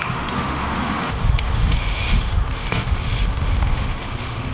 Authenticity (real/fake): fake